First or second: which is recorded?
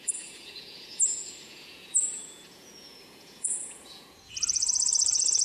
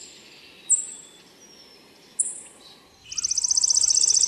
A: second